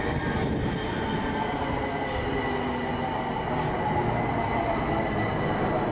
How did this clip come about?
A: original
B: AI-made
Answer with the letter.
A